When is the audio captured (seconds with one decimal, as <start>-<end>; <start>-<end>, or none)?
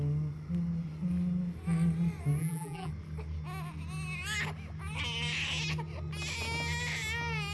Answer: 0.0-2.4; 2.9-7.5